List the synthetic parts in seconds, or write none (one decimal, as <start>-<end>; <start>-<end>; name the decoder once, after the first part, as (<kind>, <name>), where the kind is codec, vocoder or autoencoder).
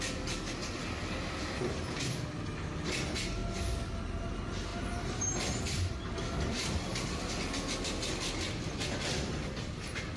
none